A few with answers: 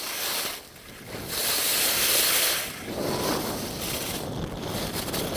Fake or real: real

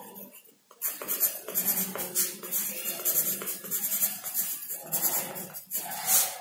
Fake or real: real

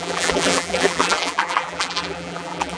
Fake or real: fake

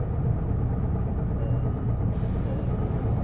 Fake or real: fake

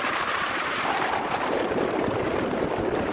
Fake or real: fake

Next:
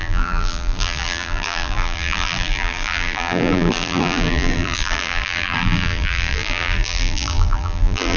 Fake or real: fake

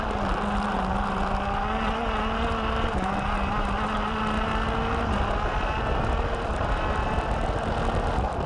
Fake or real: real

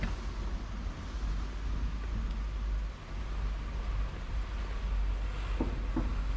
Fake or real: real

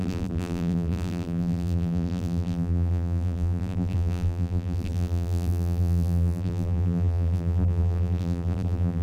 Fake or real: fake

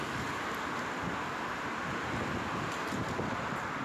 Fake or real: real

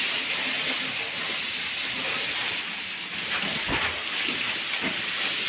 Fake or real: real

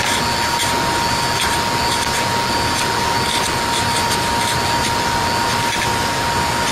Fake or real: real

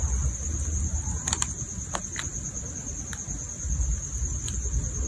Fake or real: real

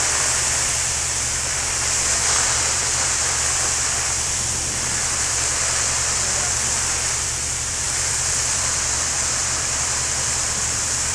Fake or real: fake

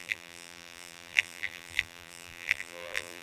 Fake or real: fake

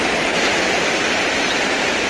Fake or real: fake